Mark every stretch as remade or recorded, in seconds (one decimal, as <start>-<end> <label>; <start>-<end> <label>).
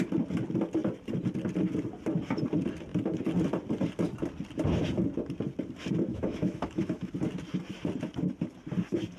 0.0-6.1 recorded; 6.1-7.1 remade; 7.1-9.2 recorded